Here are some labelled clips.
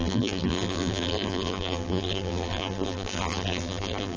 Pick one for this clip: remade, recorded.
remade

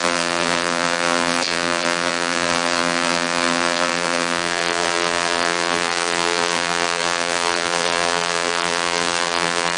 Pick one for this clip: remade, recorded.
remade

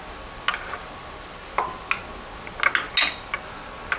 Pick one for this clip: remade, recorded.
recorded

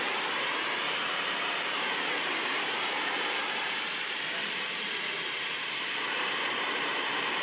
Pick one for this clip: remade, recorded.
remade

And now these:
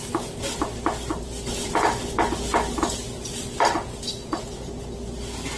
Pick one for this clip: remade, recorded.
recorded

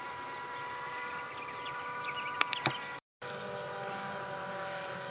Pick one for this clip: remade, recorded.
recorded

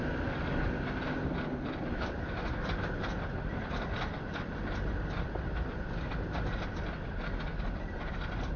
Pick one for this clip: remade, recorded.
remade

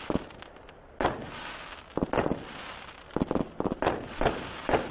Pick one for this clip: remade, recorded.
recorded